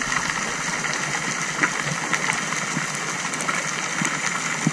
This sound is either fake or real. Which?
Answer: real